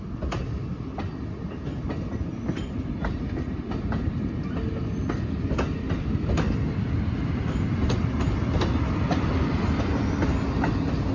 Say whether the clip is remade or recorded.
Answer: recorded